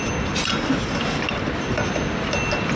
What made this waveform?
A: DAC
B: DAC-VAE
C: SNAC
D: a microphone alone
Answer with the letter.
D